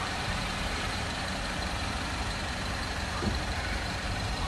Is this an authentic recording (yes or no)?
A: no